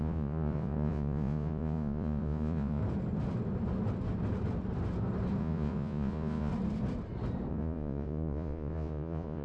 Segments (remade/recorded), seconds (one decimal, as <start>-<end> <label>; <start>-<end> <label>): 0.0-2.8 remade; 2.8-5.4 recorded; 5.4-6.5 remade; 6.5-7.5 recorded; 7.5-9.4 remade